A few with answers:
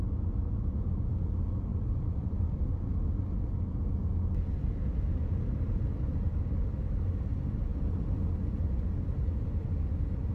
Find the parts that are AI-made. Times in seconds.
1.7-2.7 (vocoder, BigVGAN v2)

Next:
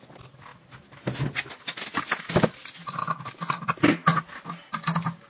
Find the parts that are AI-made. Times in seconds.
none

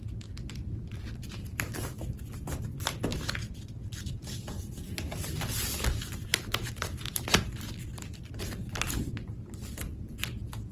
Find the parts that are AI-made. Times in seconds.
3.1-7.4 (vocoder, BigVGAN v2)

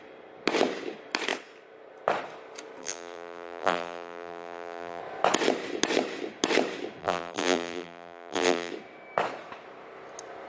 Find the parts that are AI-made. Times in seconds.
2.8-5.0 (vocoder, BigVGAN v2); 7.0-8.7

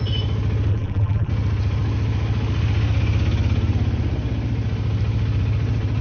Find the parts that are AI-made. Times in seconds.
0.7-1.3 (vocoder, BigVGAN v2)

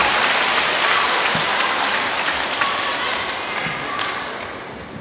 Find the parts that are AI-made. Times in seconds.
0.0-3.0 (vocoder, BigVGAN v2)